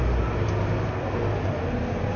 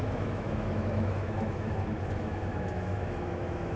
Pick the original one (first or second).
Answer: first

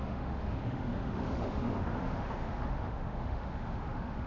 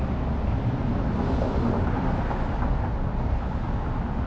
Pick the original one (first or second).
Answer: second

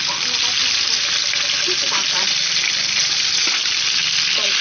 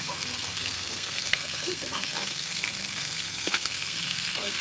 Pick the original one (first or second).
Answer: first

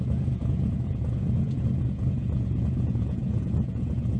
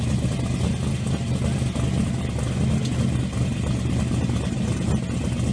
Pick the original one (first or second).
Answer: second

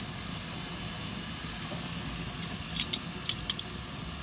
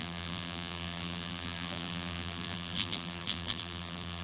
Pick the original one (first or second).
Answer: first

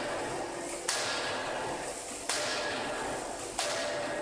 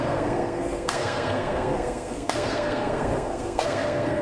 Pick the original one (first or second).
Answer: first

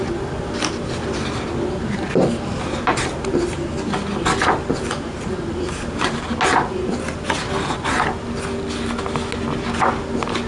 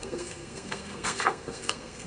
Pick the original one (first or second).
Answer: first